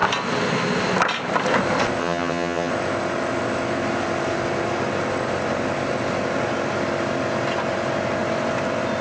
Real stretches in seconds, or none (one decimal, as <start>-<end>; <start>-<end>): 0.0-2.0; 2.7-9.0